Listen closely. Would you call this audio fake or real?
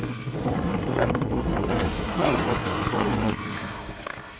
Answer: fake